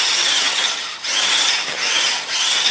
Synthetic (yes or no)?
yes